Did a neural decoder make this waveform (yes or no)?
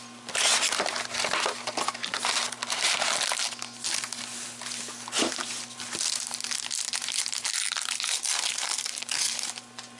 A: no